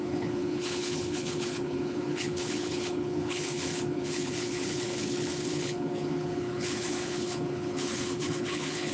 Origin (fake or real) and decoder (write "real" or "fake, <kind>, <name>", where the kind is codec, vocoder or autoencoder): fake, codec, HILCodec